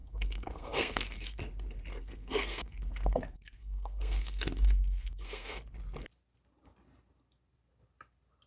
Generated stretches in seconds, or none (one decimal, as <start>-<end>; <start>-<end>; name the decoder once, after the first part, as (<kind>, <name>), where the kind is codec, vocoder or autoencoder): 0.0-1.4 (codec, SNAC); 1.9-5.6